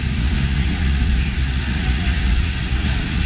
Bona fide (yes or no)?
no